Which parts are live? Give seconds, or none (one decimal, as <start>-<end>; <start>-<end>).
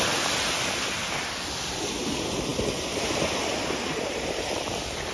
0.0-5.1